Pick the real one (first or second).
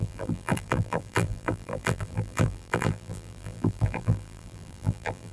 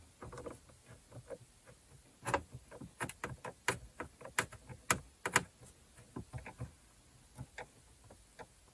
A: second